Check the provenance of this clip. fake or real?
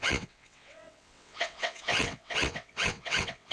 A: fake